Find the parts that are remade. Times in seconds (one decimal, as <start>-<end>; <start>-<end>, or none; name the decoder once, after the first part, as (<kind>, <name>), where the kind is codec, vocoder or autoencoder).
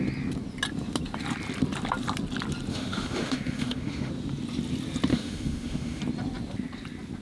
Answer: 2.7-4.1 (autoencoder, DAC-VAE); 5.1-6.0